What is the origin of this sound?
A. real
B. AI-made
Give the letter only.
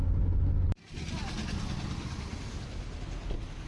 A